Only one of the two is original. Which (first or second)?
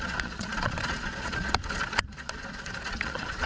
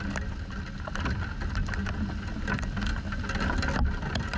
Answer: second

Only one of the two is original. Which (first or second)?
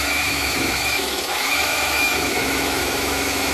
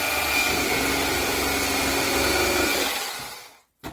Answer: second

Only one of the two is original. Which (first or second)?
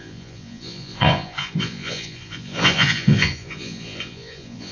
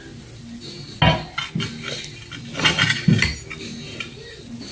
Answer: second